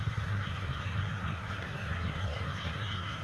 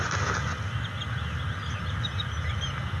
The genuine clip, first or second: second